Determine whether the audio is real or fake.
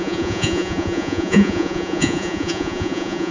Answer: fake